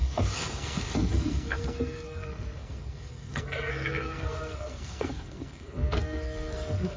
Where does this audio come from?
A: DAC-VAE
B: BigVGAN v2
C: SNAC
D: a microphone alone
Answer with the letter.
C